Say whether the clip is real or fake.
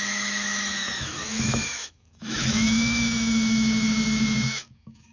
fake